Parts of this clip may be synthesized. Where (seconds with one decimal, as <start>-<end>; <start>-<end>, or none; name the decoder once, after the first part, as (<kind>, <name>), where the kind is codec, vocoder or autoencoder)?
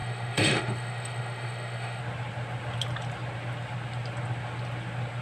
0.0-2.0 (autoencoder, DAC-VAE)